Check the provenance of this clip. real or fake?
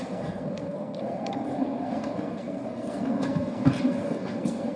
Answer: fake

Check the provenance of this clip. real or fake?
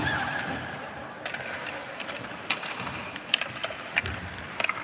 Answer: real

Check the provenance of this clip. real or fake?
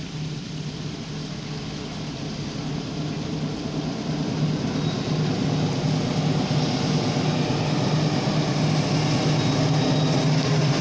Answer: real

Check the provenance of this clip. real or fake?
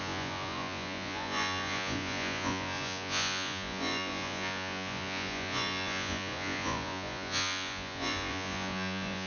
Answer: fake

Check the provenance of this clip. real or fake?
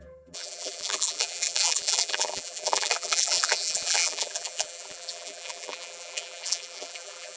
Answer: fake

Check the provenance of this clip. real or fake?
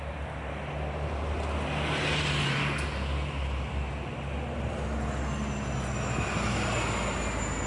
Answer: real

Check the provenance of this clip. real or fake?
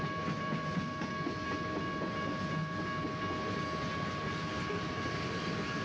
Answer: real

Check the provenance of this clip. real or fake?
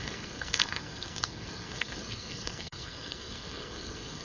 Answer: fake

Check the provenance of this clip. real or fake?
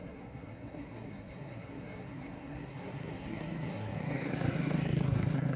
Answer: fake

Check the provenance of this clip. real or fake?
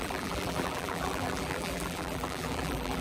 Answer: fake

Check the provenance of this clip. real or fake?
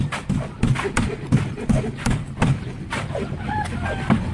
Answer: real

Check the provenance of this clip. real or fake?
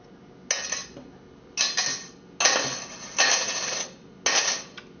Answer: real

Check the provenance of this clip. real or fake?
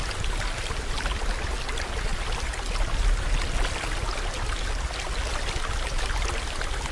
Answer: real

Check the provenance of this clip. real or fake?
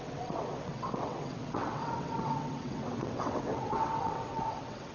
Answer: fake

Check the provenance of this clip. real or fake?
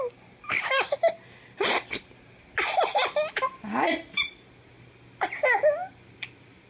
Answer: real